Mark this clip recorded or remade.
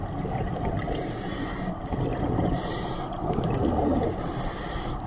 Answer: recorded